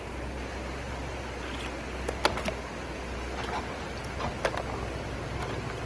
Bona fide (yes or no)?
yes